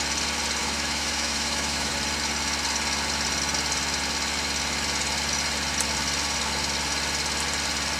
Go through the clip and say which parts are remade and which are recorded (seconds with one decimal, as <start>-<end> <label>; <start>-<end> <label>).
0.0-0.6 recorded; 0.6-1.9 remade; 1.9-8.0 recorded